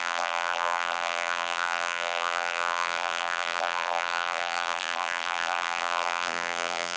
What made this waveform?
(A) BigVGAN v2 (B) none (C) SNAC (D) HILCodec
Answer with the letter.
A